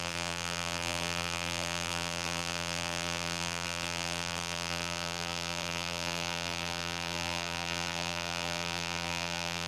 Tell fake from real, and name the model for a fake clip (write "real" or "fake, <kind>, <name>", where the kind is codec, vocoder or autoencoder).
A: fake, vocoder, BigVGAN v2